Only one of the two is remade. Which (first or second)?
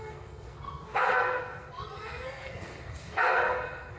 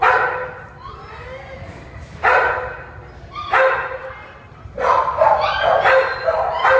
first